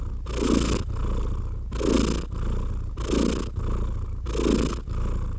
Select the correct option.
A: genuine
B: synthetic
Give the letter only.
A